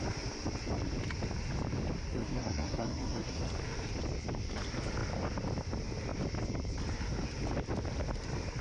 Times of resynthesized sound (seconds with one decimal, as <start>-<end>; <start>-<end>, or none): 2.1-3.4